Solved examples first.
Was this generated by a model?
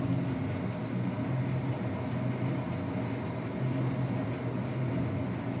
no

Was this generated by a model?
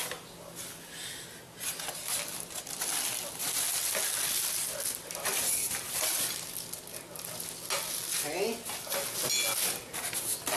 no